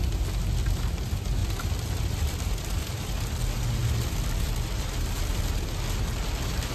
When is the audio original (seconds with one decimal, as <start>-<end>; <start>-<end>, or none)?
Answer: 0.0-1.4; 5.4-6.7